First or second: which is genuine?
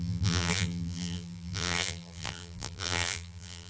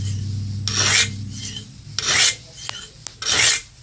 second